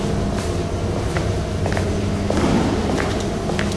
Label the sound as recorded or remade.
recorded